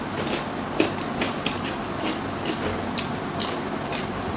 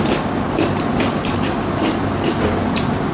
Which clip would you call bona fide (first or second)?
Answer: first